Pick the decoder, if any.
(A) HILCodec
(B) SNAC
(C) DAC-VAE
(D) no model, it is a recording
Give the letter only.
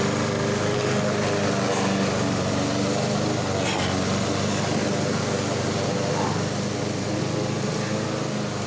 D